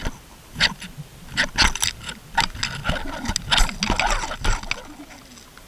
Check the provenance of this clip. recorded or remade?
recorded